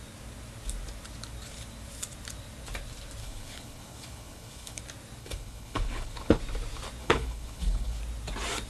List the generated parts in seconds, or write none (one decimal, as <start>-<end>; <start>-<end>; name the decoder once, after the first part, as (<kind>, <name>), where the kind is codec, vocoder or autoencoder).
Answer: 3.2-4.8 (codec, HILCodec); 5.2-6.4; 7.0-8.0